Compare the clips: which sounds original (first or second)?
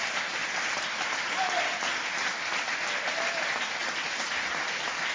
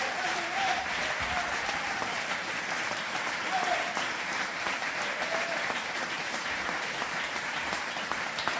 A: first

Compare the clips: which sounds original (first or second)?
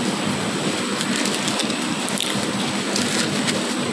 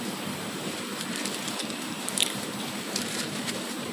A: first